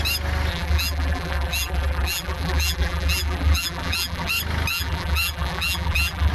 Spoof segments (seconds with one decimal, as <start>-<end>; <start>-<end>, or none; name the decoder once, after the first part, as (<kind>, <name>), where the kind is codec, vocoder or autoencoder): 0.5-4.3 (vocoder, BigVGAN v2); 4.7-6.3